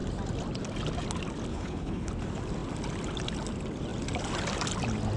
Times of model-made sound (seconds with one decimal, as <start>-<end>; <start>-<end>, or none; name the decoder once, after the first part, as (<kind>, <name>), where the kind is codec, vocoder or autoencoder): 1.5-2.1 (codec, HILCodec)